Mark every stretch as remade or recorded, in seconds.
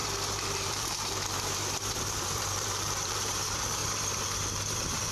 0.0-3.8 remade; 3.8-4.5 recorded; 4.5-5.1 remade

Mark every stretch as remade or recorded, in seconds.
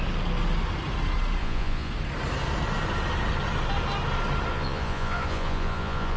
0.0-1.4 recorded; 1.4-1.9 remade; 1.9-4.5 recorded; 4.5-6.2 remade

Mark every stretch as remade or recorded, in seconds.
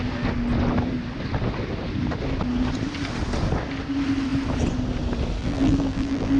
0.0-5.4 recorded; 5.4-6.4 remade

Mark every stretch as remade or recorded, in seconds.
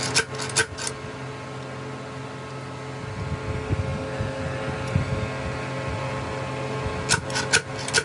0.0-8.0 recorded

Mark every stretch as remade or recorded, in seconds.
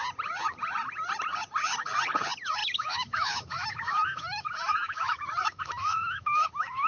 0.0-2.6 recorded; 2.6-6.9 remade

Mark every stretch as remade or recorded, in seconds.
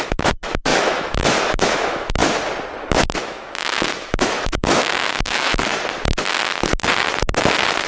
0.0-2.2 remade; 2.2-3.2 recorded; 3.2-5.7 remade; 5.7-7.9 recorded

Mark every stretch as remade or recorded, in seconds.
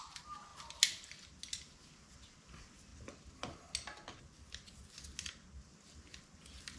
0.0-6.8 recorded